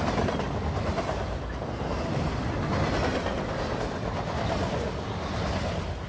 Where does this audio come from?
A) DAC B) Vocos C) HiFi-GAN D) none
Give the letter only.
D